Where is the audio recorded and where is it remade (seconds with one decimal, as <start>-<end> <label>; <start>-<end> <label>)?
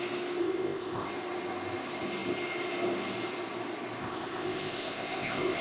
0.0-0.4 recorded; 0.4-1.1 remade; 1.1-4.0 recorded; 4.0-5.6 remade